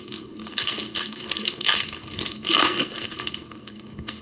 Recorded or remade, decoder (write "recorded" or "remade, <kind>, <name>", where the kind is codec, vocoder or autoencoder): remade, codec, SNAC